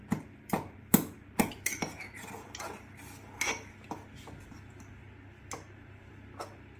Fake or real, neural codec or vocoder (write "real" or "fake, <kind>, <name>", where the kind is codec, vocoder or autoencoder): real